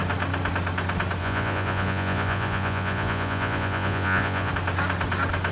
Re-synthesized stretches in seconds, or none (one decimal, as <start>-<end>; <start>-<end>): 1.2-4.5